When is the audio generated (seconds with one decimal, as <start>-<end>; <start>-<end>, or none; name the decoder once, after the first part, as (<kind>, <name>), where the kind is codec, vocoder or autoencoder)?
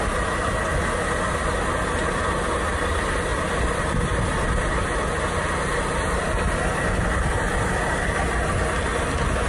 none